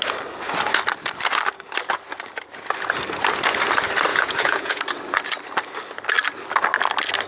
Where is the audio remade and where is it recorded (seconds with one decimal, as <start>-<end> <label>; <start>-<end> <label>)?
0.0-4.1 recorded; 4.1-4.8 remade; 4.8-7.3 recorded